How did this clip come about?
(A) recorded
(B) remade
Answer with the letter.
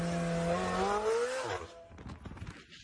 A